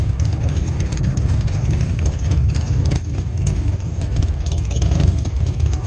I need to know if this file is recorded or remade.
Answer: remade